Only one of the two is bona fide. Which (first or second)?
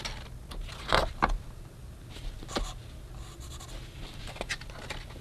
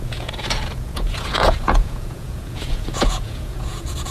first